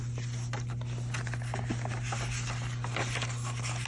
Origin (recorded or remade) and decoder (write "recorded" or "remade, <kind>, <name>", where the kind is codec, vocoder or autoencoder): recorded